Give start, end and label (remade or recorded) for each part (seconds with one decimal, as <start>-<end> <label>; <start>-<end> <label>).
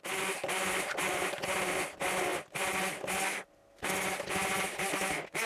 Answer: 0.0-5.5 recorded